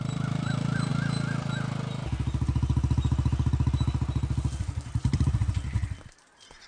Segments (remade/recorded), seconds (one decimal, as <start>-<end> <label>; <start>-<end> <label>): 0.0-0.9 remade; 0.9-4.9 recorded; 4.9-6.7 remade